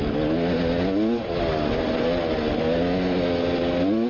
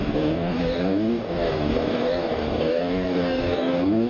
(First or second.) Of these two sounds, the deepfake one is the second